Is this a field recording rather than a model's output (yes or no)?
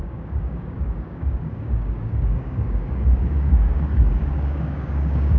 no